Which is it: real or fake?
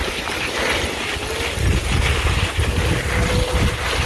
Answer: real